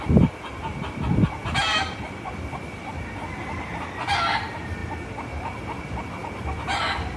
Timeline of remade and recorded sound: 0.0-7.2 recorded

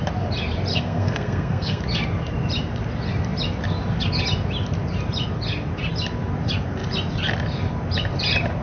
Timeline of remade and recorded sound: 0.0-0.7 recorded; 0.7-1.8 remade; 1.8-8.6 recorded

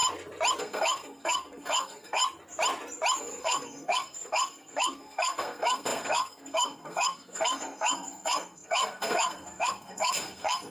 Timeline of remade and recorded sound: 0.0-0.6 recorded; 0.6-2.2 remade; 2.2-3.2 recorded; 3.2-10.7 remade

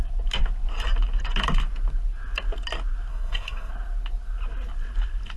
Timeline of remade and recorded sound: 0.0-3.1 recorded; 3.1-3.7 remade; 3.7-5.4 recorded

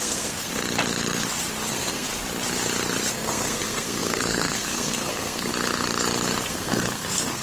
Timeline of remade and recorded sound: 0.0-0.5 remade; 0.5-1.7 recorded; 1.7-2.1 remade; 2.1-3.1 recorded; 3.1-5.5 remade; 5.5-6.5 recorded; 6.5-7.4 remade

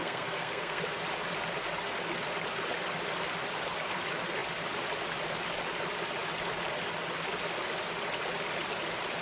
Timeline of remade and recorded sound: 0.0-0.8 remade; 0.8-9.2 recorded